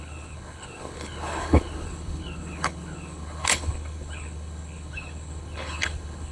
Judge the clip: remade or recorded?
remade